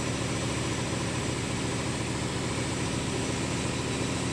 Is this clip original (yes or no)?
yes